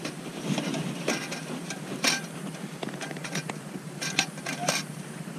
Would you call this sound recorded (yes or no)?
no